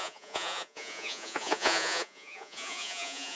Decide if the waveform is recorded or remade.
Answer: remade